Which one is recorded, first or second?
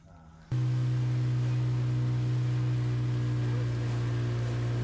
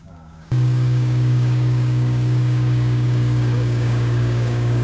first